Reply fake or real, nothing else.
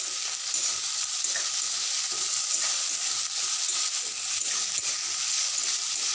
real